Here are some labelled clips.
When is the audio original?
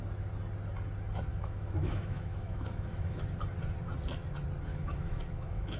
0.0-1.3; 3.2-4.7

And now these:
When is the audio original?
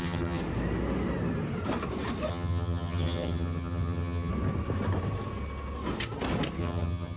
0.4-2.3; 4.3-6.6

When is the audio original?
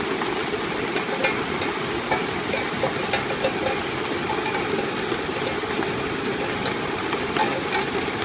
0.0-8.2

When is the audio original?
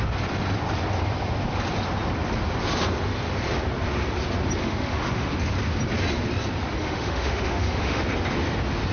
0.0-4.6; 5.3-6.8; 8.0-8.9